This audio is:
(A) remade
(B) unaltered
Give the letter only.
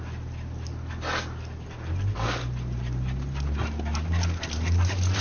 B